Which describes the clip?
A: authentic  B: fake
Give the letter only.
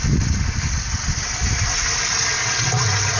A